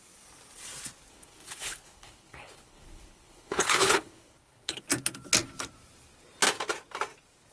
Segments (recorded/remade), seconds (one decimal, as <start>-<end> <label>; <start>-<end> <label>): 0.0-1.1 recorded; 1.1-4.8 remade; 4.8-7.5 recorded